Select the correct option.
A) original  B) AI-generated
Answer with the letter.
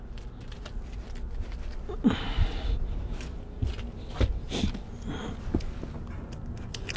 A